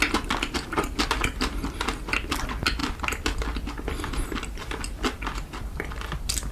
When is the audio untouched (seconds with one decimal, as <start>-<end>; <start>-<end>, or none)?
0.0-6.5